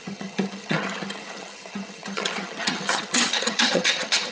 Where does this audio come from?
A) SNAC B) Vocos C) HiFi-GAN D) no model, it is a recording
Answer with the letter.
C